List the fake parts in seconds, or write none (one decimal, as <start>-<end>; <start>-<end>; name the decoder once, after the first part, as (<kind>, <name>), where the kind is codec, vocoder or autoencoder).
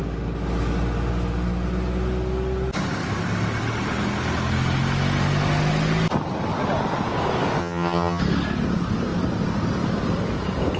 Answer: 7.6-8.2 (vocoder, HiFi-GAN)